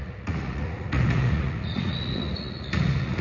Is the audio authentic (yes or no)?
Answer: no